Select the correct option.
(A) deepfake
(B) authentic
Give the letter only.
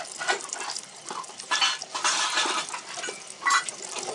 B